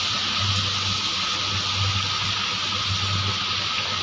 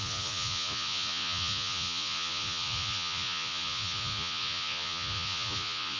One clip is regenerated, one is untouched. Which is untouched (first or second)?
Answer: first